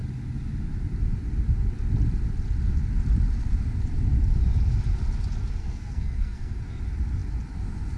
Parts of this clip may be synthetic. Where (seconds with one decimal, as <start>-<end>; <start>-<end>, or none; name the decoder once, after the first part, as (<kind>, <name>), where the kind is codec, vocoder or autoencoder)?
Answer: 5.6-6.8 (codec, SNAC)